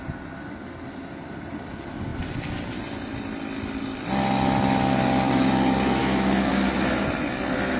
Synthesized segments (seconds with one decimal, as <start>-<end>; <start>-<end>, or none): 6.0-6.5